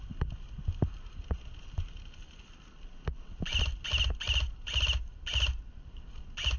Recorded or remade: recorded